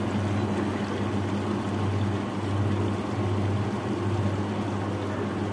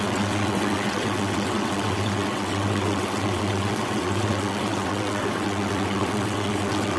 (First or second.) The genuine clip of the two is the first